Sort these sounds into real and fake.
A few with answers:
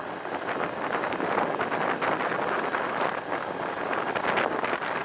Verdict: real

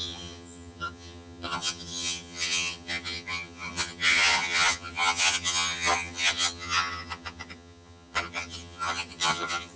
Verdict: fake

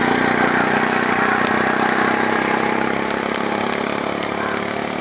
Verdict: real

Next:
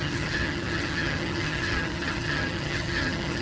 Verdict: fake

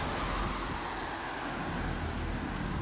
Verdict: real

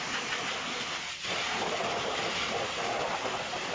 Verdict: real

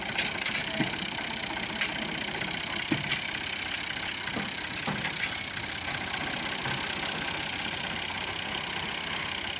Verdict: real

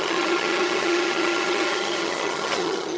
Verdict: fake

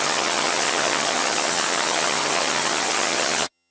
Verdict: fake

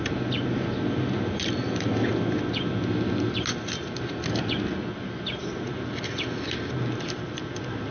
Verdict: real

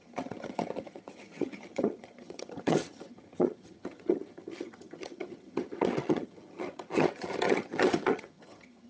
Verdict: fake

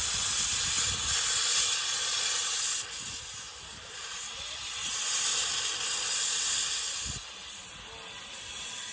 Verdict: real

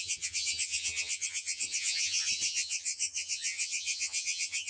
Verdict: fake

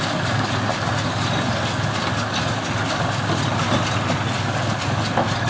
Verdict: real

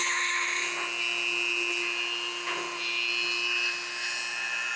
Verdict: real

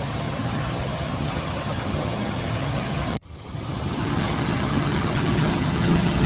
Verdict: fake